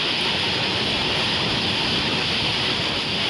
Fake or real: real